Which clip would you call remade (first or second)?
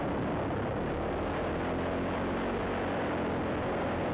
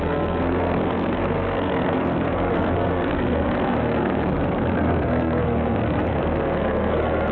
second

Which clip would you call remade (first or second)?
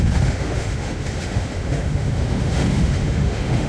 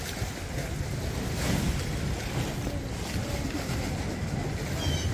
first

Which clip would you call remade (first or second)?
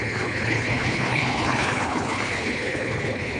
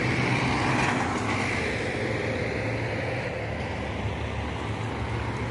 first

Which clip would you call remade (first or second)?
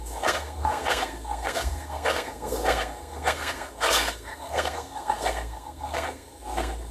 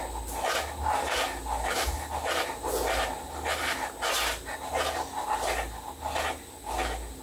first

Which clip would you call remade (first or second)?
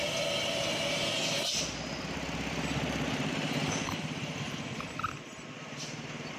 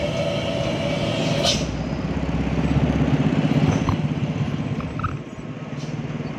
first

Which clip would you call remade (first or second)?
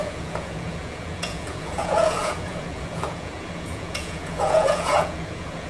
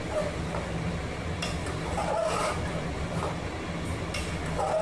first